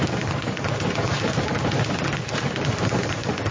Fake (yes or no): no